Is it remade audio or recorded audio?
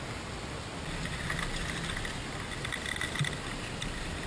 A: recorded